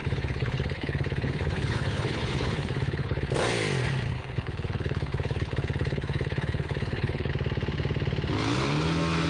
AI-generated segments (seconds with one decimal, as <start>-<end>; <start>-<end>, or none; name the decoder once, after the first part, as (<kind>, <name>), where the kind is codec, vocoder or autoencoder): 0.0-3.3 (codec, HILCodec); 4.1-7.3

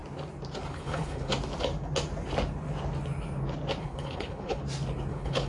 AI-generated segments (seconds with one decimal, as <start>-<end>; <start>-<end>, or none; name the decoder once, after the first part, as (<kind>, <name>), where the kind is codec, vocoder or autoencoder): 0.7-1.3 (codec, HILCodec); 3.8-4.6; 5.1-5.5

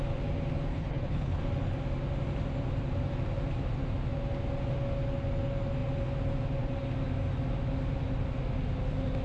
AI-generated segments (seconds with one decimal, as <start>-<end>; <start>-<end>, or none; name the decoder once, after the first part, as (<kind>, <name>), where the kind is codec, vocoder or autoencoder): 0.7-1.4 (codec, HILCodec)

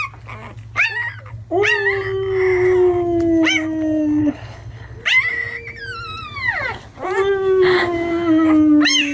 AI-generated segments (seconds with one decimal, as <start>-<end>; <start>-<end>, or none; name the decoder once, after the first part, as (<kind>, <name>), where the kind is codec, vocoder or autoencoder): 4.2-5.0 (codec, HILCodec)

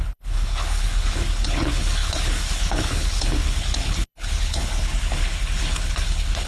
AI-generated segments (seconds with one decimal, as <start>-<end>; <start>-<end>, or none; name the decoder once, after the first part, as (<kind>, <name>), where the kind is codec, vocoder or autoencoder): 0.0-6.5 (codec, HILCodec)